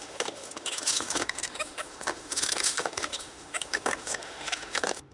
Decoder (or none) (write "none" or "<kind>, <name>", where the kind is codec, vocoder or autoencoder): autoencoder, DAC-VAE